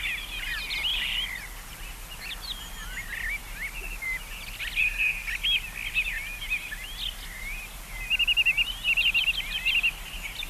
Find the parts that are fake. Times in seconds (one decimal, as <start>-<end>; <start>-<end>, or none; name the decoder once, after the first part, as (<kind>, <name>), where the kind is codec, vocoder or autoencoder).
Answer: none